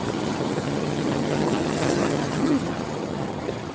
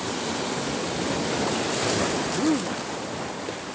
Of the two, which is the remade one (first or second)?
first